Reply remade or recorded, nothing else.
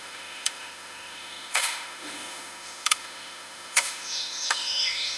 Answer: remade